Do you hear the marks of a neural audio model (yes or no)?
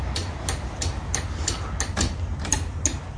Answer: no